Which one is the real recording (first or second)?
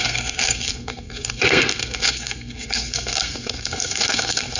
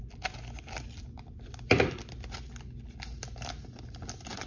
second